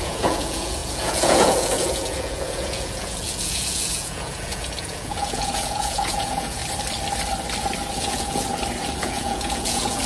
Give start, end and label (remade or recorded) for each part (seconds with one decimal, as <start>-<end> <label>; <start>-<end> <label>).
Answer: 0.0-6.6 remade; 6.6-7.9 recorded; 7.9-8.5 remade; 8.5-9.0 recorded; 9.0-10.1 remade